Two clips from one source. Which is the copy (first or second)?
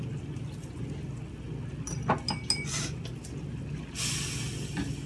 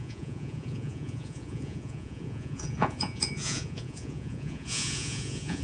second